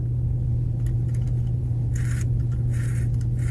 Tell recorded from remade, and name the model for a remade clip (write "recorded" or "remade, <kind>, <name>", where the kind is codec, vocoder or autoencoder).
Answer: recorded